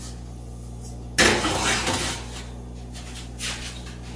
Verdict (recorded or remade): recorded